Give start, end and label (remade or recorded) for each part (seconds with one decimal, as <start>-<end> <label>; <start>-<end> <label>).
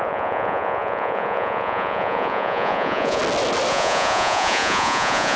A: 0.0-3.2 remade; 3.2-3.7 recorded; 3.7-5.4 remade